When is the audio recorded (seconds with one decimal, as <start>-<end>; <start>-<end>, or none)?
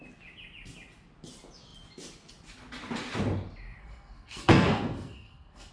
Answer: 0.0-3.8